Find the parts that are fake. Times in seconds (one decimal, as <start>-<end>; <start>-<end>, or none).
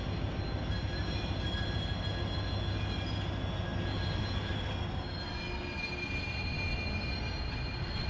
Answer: none